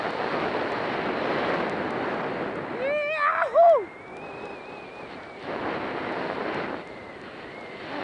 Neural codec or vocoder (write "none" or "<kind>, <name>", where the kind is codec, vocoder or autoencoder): none